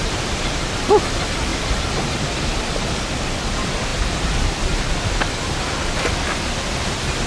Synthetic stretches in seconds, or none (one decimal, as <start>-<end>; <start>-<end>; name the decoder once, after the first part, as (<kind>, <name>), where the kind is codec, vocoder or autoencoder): none